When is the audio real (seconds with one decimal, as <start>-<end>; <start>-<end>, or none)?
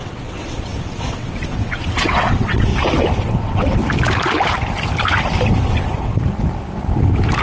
2.7-3.2; 3.8-5.6; 6.2-7.4